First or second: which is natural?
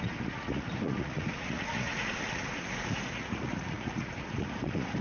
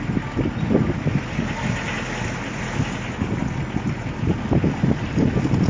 second